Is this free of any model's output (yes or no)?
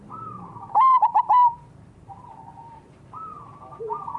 no